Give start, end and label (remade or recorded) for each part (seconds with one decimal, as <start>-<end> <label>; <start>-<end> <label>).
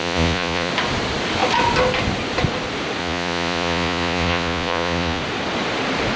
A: 0.0-0.7 remade; 0.7-3.0 recorded; 3.0-5.2 remade; 5.2-6.2 recorded